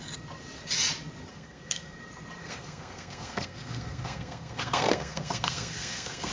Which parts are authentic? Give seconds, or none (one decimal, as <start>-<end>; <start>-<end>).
0.0-1.3; 2.0-2.4